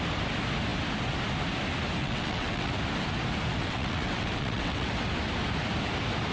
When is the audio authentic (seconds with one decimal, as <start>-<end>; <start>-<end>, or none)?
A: 0.0-2.0; 2.7-3.6; 4.9-6.3